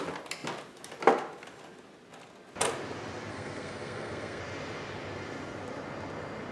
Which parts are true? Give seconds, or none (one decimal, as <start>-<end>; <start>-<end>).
0.0-3.3; 4.4-6.5